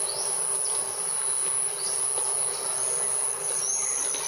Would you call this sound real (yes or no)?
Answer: yes